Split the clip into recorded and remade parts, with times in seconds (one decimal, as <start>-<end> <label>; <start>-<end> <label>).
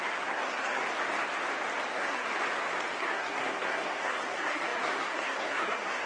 0.0-0.8 remade; 0.8-1.9 recorded; 1.9-2.3 remade; 2.3-3.0 recorded; 3.0-6.1 remade